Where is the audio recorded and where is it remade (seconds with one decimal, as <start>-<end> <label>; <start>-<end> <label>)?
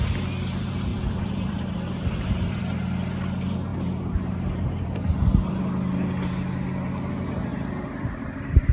0.0-0.9 recorded; 0.9-2.6 remade; 2.6-3.7 recorded; 3.7-5.6 remade; 5.6-7.5 recorded; 7.5-8.7 remade